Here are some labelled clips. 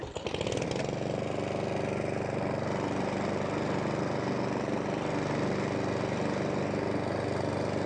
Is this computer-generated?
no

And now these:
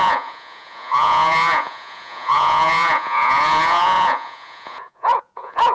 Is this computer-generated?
yes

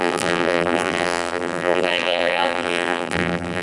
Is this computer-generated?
yes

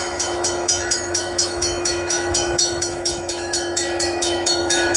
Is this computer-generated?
yes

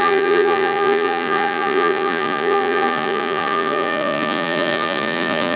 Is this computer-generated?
yes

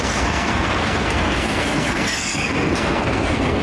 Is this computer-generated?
yes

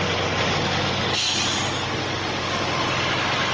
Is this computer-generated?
no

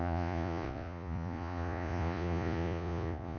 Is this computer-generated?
yes